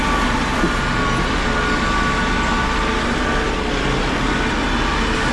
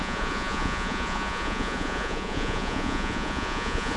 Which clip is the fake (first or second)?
second